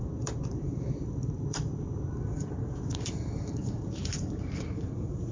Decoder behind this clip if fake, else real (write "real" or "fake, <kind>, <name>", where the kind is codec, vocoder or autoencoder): fake, vocoder, BigVGAN v2